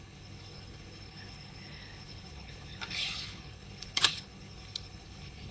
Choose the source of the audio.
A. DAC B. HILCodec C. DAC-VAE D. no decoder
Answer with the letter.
B